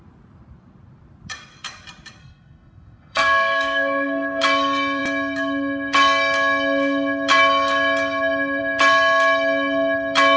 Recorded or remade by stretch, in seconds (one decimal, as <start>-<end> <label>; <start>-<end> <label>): 0.0-2.2 recorded; 2.2-4.4 remade; 4.4-10.4 recorded